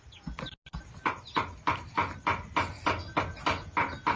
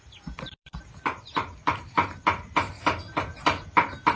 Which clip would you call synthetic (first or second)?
second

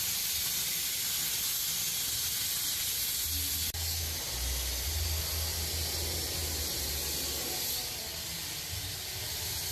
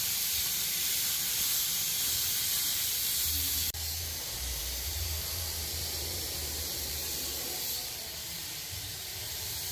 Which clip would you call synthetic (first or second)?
second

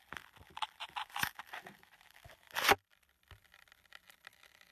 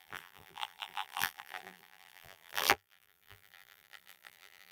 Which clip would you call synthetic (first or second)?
second